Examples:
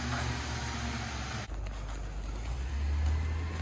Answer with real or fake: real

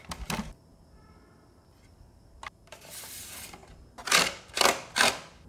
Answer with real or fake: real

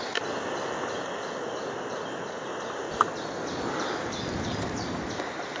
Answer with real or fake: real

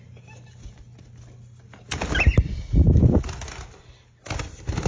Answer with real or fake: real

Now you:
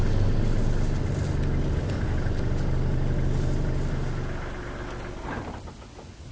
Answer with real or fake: real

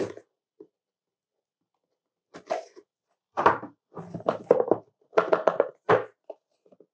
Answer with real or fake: real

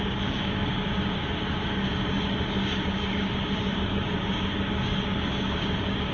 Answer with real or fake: fake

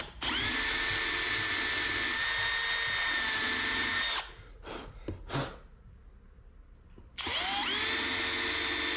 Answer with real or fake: real